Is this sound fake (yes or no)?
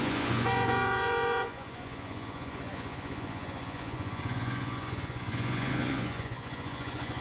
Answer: yes